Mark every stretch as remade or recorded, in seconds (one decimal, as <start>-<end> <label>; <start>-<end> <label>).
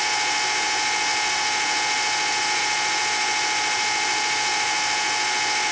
0.0-5.7 recorded